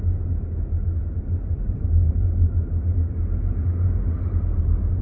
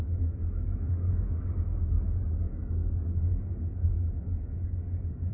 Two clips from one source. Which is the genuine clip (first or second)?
first